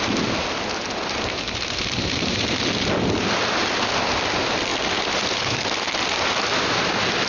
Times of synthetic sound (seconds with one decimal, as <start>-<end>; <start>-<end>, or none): none